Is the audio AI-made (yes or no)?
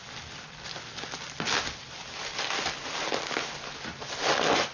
no